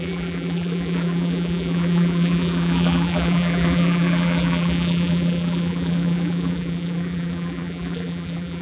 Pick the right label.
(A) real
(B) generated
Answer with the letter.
B